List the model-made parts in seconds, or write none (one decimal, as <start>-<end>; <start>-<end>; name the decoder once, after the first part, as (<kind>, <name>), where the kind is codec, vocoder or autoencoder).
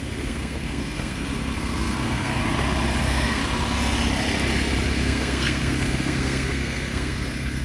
0.0-2.4 (codec, SNAC); 3.0-3.4; 4.9-7.6